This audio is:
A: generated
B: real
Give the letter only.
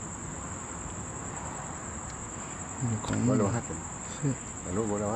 B